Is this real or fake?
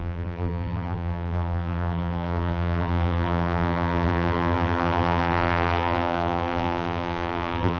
fake